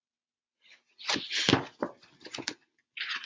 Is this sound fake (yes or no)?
no